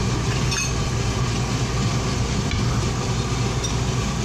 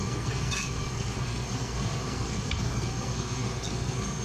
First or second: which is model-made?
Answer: second